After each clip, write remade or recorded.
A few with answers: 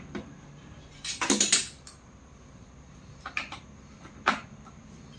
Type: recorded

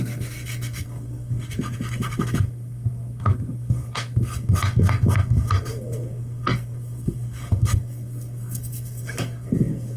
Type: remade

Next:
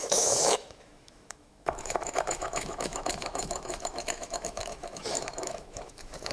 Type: remade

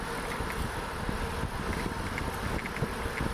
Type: recorded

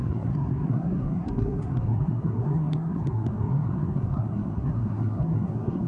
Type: remade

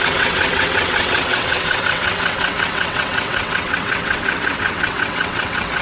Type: remade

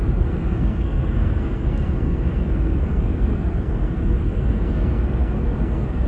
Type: remade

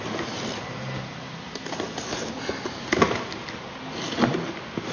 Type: recorded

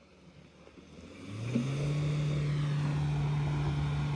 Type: recorded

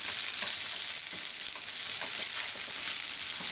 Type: recorded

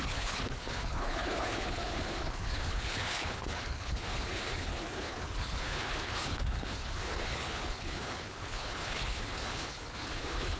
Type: remade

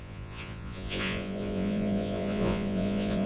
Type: remade